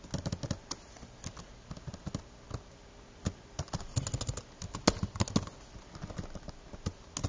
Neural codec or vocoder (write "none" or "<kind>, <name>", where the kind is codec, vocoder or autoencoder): none